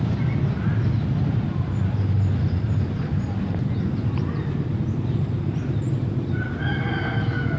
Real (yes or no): yes